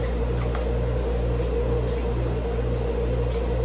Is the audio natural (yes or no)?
yes